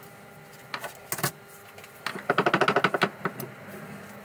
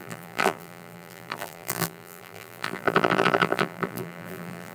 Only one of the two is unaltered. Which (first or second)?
first